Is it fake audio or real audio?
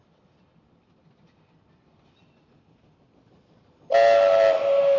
real